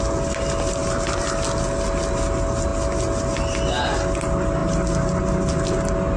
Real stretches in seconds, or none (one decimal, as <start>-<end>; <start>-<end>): 0.0-0.8; 1.6-6.2